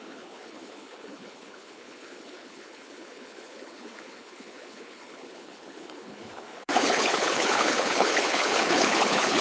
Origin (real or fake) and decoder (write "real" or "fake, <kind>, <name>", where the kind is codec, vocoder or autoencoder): fake, codec, HILCodec